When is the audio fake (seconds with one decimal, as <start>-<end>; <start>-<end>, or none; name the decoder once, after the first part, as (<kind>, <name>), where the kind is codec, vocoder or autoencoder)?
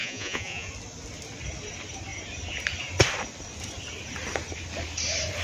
0.0-0.7 (vocoder, Vocos)